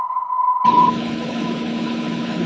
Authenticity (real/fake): fake